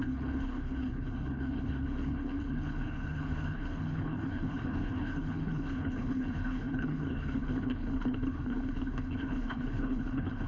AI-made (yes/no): yes